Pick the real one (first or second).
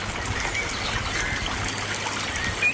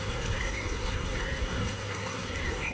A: first